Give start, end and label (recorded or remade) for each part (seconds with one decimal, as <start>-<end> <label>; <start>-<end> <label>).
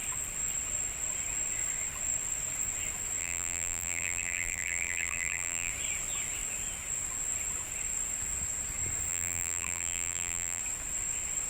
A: 0.0-3.2 recorded; 3.2-5.7 remade; 5.7-9.1 recorded; 9.1-10.6 remade; 10.6-11.5 recorded